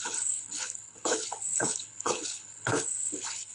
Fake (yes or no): yes